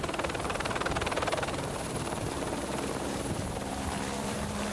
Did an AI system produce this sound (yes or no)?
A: yes